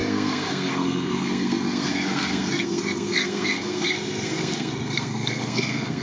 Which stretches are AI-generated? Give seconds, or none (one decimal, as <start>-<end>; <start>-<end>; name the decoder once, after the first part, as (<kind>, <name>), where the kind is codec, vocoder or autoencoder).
0.0-6.0 (codec, SNAC)